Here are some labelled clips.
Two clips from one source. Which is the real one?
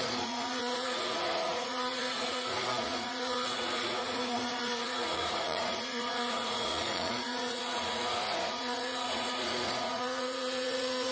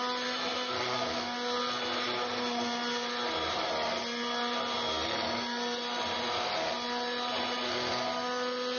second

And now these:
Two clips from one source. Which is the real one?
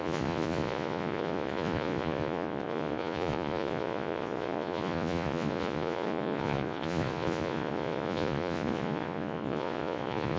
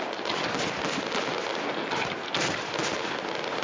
second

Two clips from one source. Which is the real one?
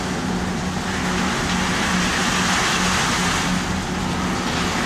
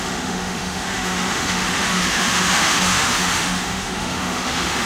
first